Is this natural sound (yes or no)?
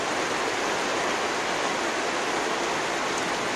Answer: yes